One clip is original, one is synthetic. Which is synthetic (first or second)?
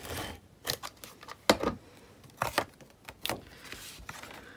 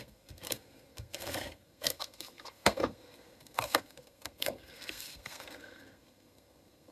second